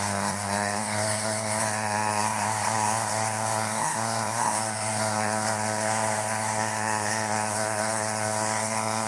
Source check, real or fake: fake